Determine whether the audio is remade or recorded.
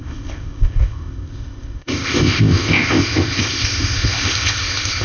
remade